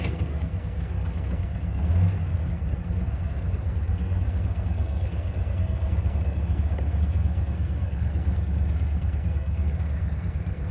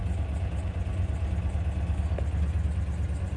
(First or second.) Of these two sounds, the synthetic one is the first